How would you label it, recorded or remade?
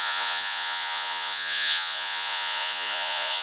remade